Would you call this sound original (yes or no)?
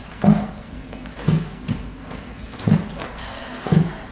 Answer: no